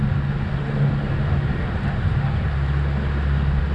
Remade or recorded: recorded